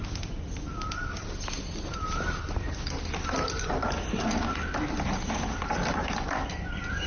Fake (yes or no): no